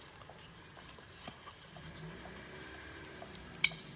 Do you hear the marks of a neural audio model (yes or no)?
yes